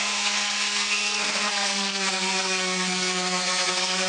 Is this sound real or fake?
fake